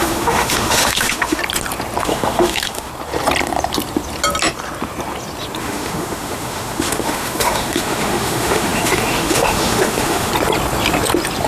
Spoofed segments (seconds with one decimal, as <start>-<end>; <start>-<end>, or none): 0.0-1.4; 2.0-2.9; 5.6-10.3